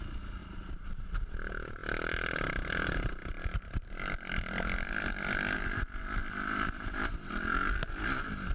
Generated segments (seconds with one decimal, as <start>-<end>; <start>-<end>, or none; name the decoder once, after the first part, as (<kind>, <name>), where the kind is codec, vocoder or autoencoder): none